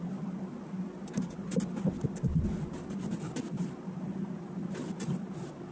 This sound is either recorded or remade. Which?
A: remade